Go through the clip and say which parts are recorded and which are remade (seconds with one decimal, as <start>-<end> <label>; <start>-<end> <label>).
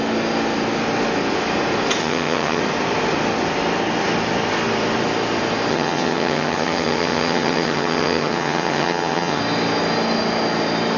0.0-2.0 recorded; 2.0-2.6 remade; 2.6-5.7 recorded; 5.7-9.4 remade; 9.4-11.0 recorded